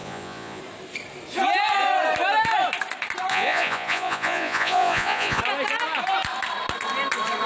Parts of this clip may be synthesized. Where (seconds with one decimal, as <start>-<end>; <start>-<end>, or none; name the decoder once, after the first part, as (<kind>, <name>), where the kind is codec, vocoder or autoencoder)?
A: 0.0-0.6 (vocoder, Vocos); 3.3-5.4